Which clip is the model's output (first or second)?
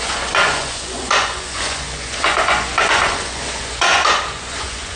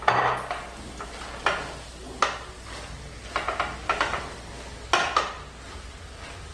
first